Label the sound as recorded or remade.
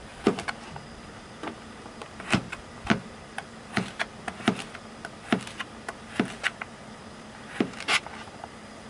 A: recorded